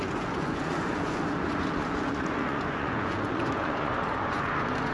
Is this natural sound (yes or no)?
no